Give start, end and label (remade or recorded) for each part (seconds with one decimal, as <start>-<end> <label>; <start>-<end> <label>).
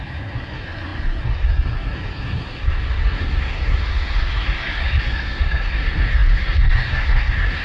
0.0-7.6 remade